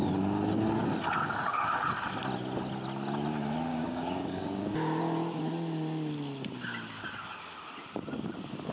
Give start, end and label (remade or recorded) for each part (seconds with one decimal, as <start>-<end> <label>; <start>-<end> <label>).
0.0-3.7 recorded; 3.7-5.0 remade; 5.0-8.7 recorded